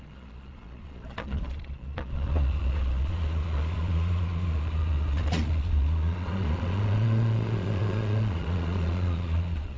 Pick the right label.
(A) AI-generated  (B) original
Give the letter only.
A